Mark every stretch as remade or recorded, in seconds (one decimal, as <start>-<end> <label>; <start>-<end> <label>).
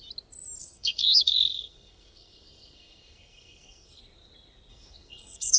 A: 0.0-0.6 recorded; 0.6-4.0 remade; 4.0-4.7 recorded; 4.7-5.6 remade